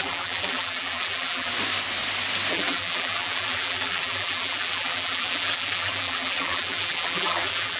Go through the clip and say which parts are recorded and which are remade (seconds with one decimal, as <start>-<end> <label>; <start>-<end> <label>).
0.0-1.5 remade; 1.5-2.5 recorded; 2.5-7.8 remade